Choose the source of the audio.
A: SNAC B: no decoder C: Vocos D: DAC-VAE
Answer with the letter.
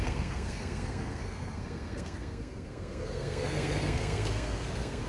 A